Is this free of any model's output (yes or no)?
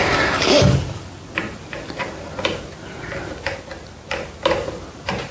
yes